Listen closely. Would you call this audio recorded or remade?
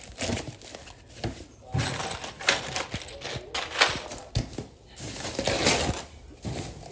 recorded